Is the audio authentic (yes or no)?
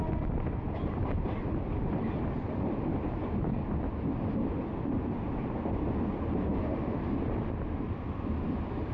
yes